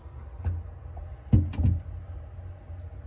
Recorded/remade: recorded